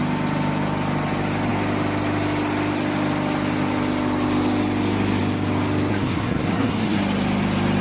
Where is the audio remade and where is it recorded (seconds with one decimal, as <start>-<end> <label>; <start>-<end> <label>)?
0.0-5.9 recorded; 5.9-7.0 remade; 7.0-7.8 recorded

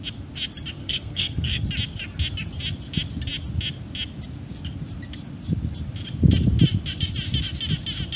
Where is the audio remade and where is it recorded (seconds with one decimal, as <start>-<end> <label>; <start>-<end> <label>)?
0.0-0.8 recorded; 0.8-1.6 remade; 1.6-8.2 recorded

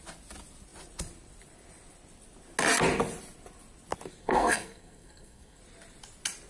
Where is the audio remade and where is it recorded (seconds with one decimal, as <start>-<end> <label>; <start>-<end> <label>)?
0.0-4.2 recorded; 4.2-5.6 remade; 5.6-6.5 recorded

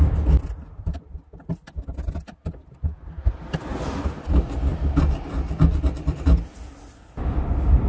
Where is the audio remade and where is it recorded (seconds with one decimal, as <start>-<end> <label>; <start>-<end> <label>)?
0.0-7.9 recorded